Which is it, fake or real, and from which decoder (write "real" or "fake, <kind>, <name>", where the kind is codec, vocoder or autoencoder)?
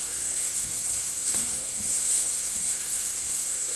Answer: fake, codec, SNAC